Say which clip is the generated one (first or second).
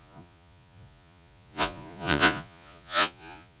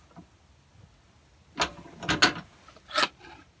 first